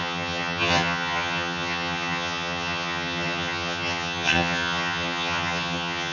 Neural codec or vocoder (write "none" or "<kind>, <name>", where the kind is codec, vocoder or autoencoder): vocoder, HiFi-GAN